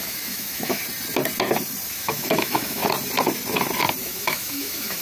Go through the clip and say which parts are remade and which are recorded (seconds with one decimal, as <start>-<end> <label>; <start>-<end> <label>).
0.0-0.8 remade; 0.8-1.9 recorded; 1.9-2.8 remade; 2.8-4.0 recorded; 4.0-5.0 remade